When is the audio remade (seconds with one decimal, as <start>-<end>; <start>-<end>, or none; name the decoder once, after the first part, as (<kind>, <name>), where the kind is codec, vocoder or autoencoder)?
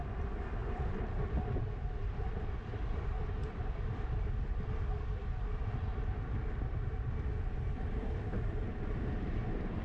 0.6-3.0 (vocoder, BigVGAN v2); 3.4-7.1